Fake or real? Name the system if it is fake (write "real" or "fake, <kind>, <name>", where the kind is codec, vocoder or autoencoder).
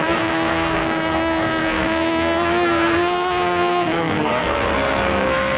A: fake, codec, SNAC